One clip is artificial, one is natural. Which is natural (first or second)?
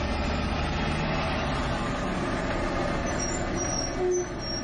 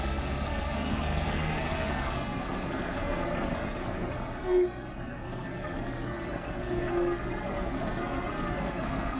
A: first